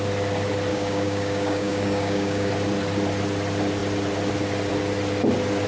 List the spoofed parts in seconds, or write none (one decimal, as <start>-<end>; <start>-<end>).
0.7-2.5